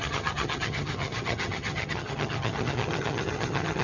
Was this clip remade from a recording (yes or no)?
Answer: yes